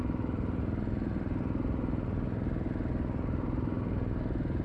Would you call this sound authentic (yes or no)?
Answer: yes